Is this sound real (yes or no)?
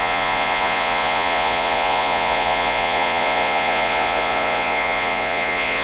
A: no